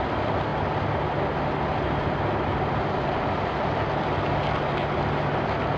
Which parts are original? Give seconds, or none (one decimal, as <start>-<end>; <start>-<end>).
0.0-5.8